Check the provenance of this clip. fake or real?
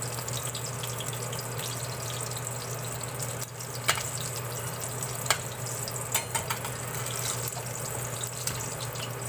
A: real